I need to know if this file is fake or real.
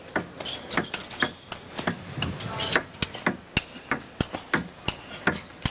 real